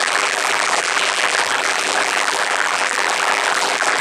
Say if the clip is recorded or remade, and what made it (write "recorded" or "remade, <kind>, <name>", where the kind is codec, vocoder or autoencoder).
remade, vocoder, BigVGAN v2